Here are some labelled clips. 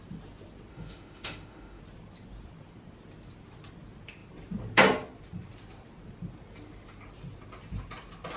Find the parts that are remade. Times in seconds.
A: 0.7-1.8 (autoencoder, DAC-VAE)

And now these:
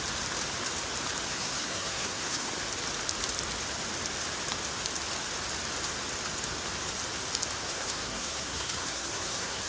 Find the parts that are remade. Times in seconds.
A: 1.3-2.5 (codec, SNAC); 7.6-9.7

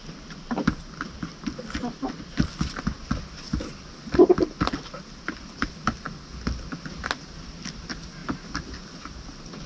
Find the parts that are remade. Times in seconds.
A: none

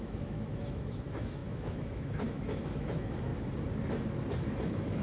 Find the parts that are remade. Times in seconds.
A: 0.0-3.3 (autoencoder, DAC-VAE); 4.6-5.0

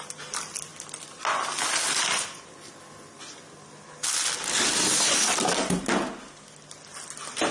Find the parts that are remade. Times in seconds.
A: none

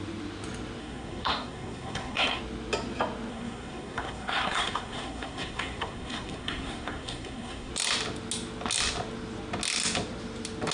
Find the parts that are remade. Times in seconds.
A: 0.8-2.4 (codec, SNAC); 3.3-7.7

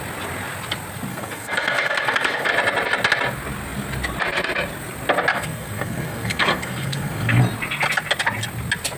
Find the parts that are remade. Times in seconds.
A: 1.1-2.5 (codec, SNAC); 5.3-7.4

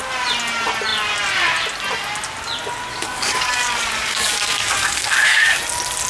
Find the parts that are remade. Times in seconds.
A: 2.9-5.6 (codec, DAC)